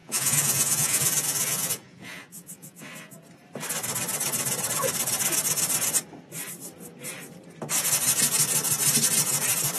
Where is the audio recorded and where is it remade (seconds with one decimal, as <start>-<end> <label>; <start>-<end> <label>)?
0.0-3.2 remade; 3.2-9.8 recorded